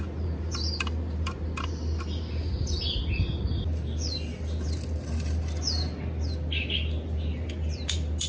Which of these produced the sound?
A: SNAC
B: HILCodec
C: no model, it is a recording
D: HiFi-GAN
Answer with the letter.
C